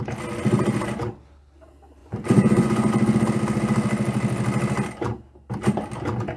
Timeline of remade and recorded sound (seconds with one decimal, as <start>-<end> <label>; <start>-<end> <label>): 0.0-2.0 recorded; 2.0-2.9 remade; 2.9-6.4 recorded